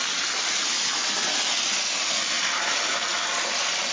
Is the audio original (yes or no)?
yes